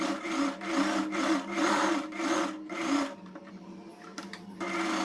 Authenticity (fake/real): fake